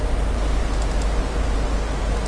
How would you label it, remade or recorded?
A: recorded